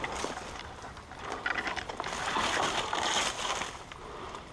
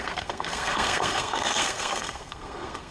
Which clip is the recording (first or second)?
first